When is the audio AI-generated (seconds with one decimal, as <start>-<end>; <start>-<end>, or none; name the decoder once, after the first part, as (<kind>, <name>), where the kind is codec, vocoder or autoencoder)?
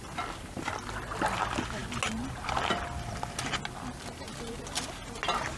none